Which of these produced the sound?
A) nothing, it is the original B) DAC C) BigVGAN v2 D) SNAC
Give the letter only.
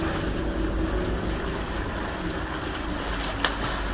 A